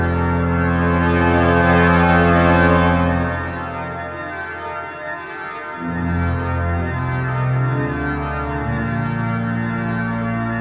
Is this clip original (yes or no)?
yes